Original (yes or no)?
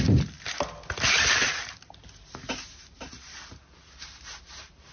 yes